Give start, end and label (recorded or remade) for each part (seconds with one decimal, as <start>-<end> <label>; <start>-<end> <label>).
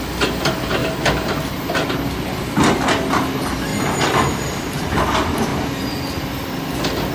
0.0-7.1 recorded